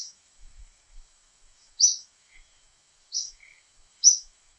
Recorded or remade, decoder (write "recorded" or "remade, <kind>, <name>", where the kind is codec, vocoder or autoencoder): remade, autoencoder, DAC-VAE